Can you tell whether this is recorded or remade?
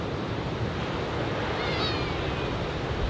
recorded